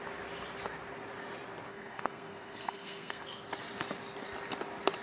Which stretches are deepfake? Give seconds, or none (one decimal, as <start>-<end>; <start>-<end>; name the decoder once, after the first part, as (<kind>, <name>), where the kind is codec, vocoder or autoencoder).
1.7-3.5 (codec, SNAC)